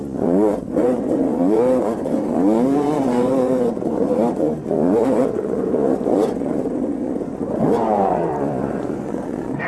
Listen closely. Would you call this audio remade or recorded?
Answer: remade